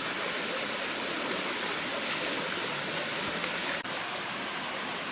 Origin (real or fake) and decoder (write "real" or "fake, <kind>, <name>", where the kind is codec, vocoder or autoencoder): real